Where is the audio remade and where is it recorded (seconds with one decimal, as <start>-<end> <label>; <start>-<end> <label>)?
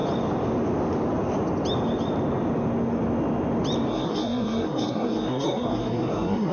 0.0-3.9 recorded; 3.9-6.5 remade